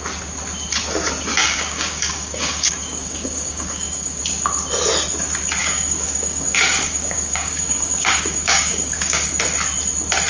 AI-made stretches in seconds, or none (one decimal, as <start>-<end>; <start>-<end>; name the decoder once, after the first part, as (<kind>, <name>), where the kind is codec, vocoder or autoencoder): 1.4-4.2 (codec, DAC); 5.6-9.3